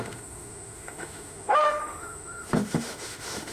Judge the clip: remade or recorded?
remade